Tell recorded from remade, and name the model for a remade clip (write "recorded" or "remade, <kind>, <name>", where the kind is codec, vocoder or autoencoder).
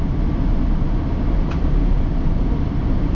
recorded